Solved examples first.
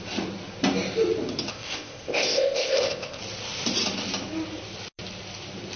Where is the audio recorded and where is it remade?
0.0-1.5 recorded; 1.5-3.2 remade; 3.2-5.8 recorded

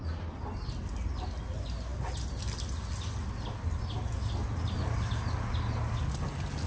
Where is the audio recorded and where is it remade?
0.0-6.7 recorded

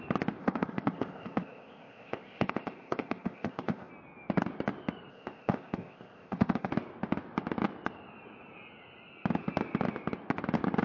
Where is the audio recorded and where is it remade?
0.0-0.4 recorded; 0.4-3.9 remade; 3.9-5.1 recorded; 5.1-6.7 remade; 6.7-10.8 recorded

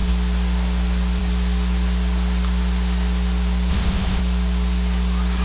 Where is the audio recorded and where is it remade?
0.0-3.7 recorded; 3.7-4.2 remade; 4.2-5.4 recorded